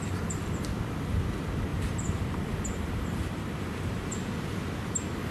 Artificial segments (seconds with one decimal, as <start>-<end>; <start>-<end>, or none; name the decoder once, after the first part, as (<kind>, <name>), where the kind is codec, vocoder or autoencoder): 1.7-4.1 (vocoder, BigVGAN v2)